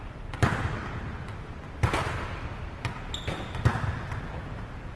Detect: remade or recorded recorded